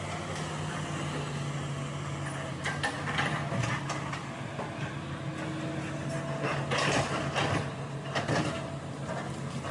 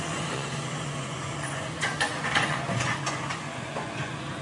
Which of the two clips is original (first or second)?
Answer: first